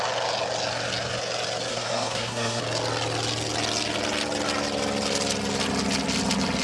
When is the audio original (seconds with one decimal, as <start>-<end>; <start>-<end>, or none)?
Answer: 0.0-1.7; 2.6-6.6